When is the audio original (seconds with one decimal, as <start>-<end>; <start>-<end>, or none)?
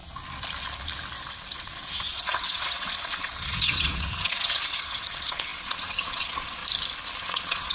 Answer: 0.0-1.3; 6.6-7.2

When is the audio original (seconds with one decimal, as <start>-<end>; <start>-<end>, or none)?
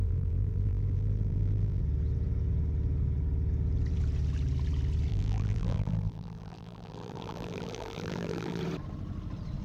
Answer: 1.8-5.1; 8.6-9.6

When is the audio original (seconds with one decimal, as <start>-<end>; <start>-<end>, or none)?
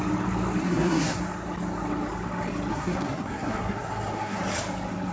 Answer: 0.0-0.6; 1.2-2.7; 4.4-5.1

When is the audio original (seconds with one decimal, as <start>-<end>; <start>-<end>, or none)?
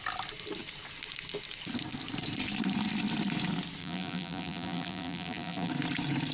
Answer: 0.0-3.8; 5.7-6.3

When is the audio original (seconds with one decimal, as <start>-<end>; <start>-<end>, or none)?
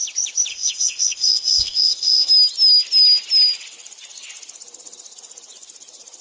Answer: 0.0-0.5; 2.3-6.2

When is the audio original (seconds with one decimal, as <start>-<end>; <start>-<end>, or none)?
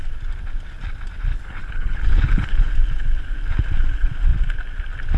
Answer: 0.0-1.3; 2.7-5.2